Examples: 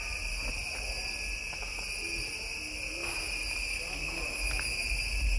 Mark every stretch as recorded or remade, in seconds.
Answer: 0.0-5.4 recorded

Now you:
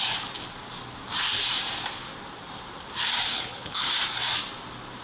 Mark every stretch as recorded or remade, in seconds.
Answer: 0.0-3.3 recorded; 3.3-3.9 remade; 3.9-5.0 recorded

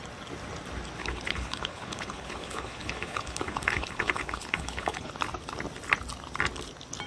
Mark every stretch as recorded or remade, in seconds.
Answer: 0.0-1.0 recorded; 1.0-5.1 remade; 5.1-7.1 recorded

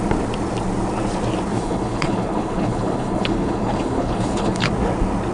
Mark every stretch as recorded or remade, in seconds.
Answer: 0.0-1.5 recorded; 1.5-4.7 remade; 4.7-5.3 recorded

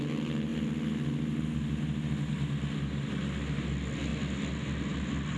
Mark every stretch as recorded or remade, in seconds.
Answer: 0.0-5.4 recorded

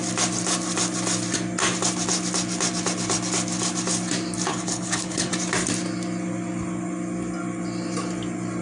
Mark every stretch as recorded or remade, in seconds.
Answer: 0.0-4.5 recorded; 4.5-5.3 remade; 5.3-8.6 recorded

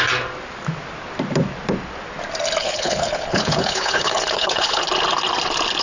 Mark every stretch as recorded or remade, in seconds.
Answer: 0.0-2.6 recorded; 2.6-4.8 remade; 4.8-5.8 recorded